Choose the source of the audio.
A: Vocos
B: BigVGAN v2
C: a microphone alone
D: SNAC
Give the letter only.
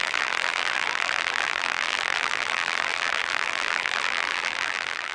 B